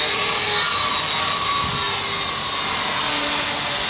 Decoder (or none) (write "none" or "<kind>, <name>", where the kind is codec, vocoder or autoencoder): none